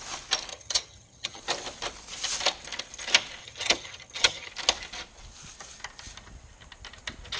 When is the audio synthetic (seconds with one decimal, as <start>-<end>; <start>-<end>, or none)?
0.5-1.4; 3.4-4.5